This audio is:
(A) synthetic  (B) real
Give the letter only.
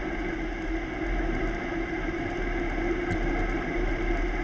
B